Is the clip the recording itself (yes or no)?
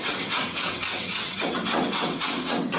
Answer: no